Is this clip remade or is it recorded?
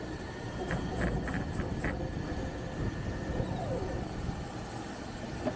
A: recorded